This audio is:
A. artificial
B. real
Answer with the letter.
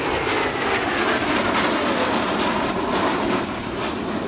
B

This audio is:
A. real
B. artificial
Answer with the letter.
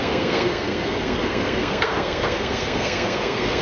B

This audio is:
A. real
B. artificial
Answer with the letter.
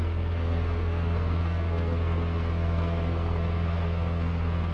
B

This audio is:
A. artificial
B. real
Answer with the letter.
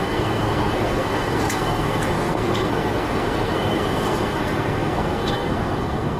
A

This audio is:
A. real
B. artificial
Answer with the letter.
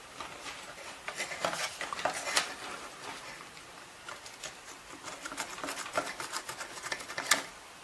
A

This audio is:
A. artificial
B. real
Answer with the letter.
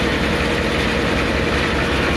B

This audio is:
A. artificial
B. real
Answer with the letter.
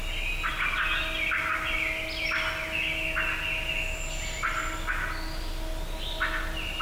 B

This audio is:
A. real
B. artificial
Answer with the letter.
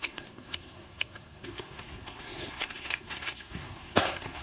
B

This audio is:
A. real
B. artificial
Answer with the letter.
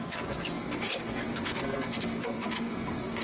B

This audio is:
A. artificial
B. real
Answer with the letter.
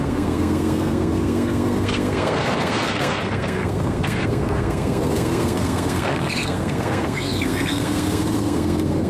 A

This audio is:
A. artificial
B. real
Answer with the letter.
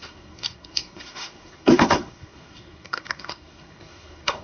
A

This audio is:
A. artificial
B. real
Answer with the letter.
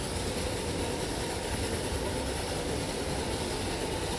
B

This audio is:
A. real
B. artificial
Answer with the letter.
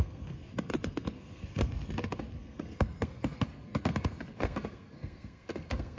B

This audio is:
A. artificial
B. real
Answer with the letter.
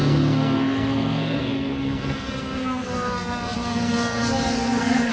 A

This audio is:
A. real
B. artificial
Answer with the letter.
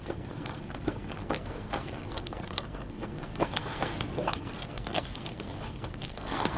B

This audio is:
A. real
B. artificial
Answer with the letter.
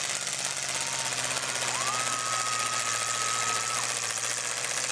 A